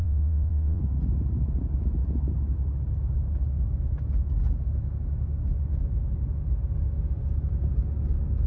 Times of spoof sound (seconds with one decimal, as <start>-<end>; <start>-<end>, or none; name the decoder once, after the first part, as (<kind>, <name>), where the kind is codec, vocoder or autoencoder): 0.0-0.8 (vocoder, WaveNeXt)